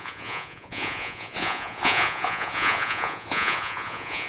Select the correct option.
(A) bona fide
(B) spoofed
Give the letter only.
B